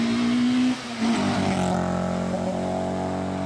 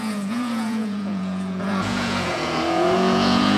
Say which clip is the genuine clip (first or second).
first